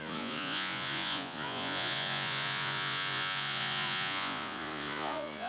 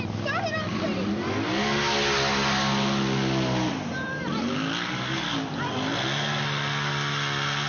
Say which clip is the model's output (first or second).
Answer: first